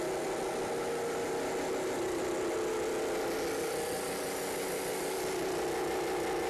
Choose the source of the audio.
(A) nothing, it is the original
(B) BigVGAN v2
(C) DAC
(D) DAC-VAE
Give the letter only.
A